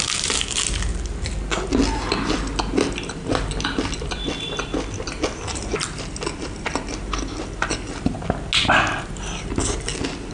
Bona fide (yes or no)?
yes